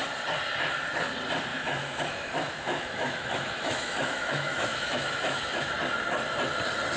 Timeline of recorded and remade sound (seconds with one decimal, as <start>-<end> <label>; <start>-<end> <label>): 0.0-1.5 recorded; 1.5-5.7 remade; 5.7-7.0 recorded